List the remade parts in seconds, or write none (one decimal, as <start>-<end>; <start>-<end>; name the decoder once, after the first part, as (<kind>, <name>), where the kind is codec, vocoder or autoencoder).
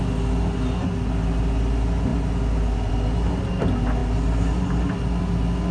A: none